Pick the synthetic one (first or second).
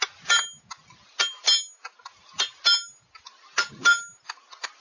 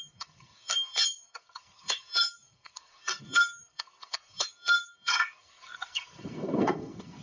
second